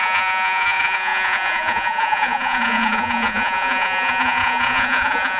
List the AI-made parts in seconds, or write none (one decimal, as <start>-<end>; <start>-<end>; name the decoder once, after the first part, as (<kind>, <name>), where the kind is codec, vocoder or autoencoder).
0.0-5.4 (vocoder, Vocos)